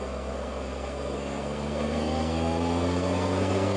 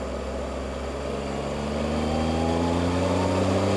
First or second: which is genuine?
second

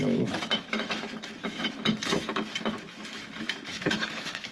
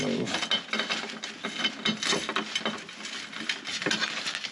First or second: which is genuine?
second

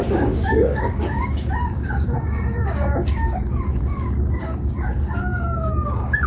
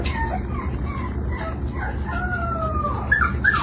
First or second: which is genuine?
second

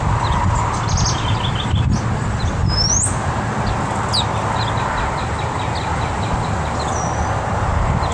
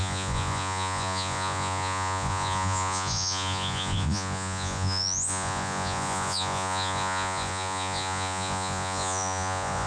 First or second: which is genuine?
first